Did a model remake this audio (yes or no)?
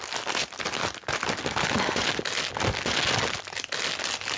no